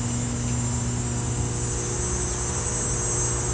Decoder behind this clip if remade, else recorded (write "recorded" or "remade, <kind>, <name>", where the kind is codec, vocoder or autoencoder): recorded